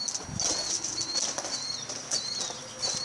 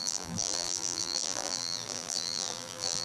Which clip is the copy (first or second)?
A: second